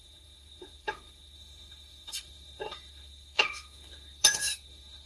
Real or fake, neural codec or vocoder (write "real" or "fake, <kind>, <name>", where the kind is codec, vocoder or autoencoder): fake, autoencoder, DAC-VAE